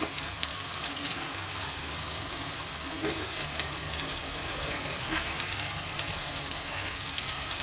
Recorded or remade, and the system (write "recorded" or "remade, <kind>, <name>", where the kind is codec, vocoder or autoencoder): remade, codec, SNAC